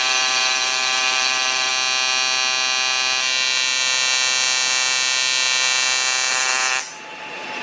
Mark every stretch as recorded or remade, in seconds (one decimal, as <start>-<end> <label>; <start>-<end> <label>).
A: 0.0-1.7 remade; 1.7-6.3 recorded; 6.3-7.6 remade